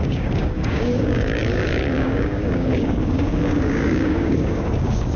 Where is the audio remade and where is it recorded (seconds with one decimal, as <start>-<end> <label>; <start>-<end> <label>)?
0.0-5.2 remade